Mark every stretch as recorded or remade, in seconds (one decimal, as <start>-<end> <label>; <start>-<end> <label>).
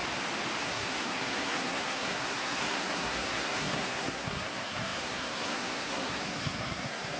0.0-0.6 recorded; 0.6-7.2 remade